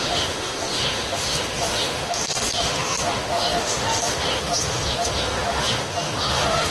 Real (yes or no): no